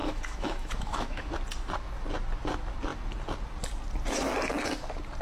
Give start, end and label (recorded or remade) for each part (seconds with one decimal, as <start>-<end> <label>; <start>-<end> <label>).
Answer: 0.0-1.3 remade; 1.3-5.2 recorded